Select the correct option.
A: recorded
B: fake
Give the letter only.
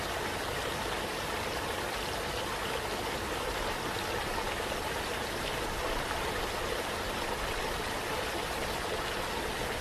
A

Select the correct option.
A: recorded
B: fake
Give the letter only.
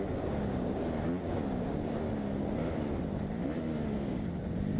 A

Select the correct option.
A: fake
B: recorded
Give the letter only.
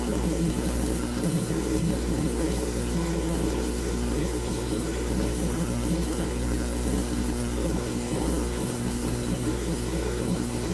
A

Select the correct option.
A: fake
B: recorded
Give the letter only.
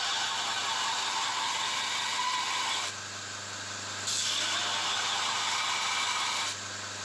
B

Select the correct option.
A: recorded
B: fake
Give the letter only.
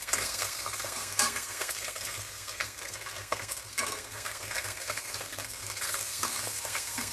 B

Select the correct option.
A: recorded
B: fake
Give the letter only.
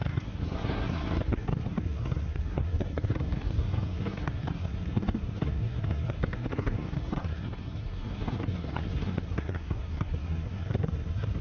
B